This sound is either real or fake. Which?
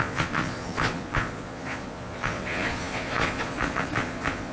fake